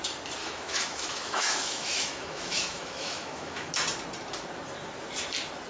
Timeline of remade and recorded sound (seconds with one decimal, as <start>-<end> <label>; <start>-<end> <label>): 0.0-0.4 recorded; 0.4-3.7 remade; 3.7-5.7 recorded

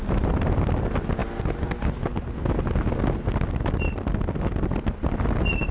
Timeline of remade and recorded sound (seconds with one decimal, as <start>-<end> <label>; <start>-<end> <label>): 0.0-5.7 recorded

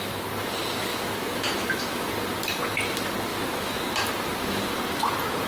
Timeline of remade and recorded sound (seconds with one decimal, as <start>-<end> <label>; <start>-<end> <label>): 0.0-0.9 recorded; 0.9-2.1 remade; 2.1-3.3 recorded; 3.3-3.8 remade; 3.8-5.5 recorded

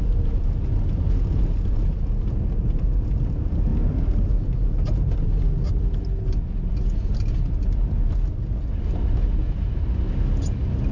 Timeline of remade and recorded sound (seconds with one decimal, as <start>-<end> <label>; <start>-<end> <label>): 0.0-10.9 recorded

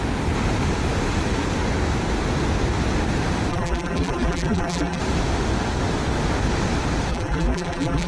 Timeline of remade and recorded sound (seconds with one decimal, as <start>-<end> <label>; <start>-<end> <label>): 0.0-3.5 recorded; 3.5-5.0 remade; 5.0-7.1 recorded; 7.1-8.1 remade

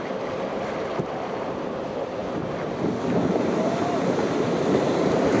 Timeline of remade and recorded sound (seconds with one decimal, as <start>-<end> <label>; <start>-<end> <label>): 0.0-5.4 recorded

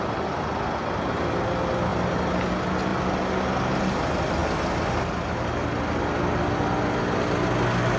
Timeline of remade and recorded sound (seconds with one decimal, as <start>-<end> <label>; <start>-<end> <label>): 0.0-8.0 recorded